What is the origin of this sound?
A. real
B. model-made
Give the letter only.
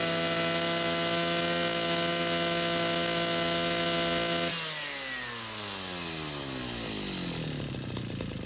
A